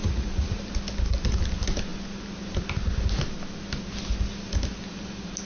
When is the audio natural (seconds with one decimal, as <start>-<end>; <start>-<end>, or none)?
0.6-5.5